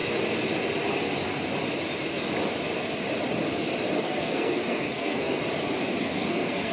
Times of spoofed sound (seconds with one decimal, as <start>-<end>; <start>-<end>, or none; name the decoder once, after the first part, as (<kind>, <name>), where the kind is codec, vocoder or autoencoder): 4.0-5.4 (codec, SNAC); 6.0-6.7